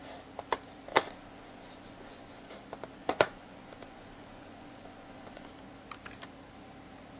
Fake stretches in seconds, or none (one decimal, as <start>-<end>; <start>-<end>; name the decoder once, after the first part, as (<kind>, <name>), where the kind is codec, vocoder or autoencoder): 0.9-2.5 (vocoder, Vocos); 3.0-5.5